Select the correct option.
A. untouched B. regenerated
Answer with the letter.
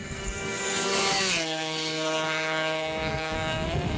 B